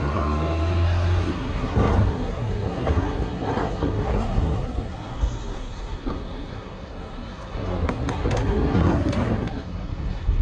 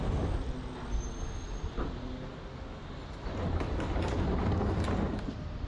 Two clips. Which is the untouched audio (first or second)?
second